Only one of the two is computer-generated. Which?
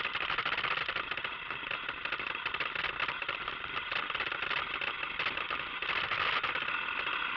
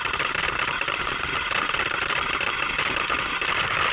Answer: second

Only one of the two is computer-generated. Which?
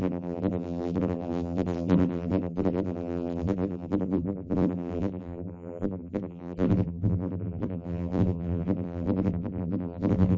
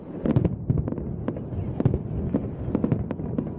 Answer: first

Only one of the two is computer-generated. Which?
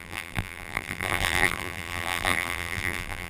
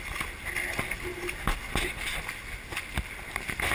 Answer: first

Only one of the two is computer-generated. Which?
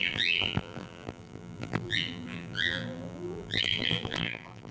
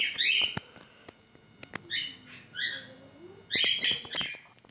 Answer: first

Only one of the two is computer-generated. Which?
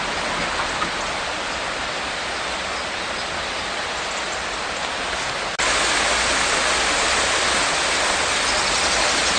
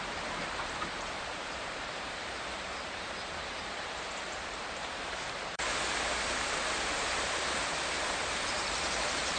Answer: second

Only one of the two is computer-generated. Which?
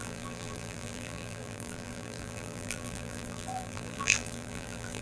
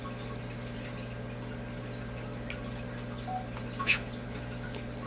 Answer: first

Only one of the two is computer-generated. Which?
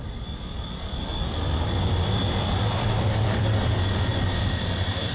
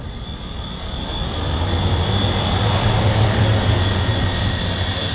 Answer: first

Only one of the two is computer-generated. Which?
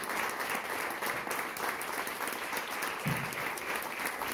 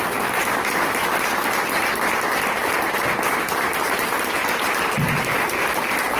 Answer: second